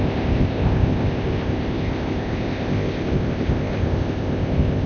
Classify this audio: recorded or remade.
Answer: remade